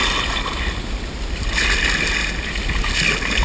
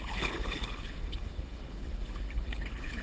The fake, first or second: second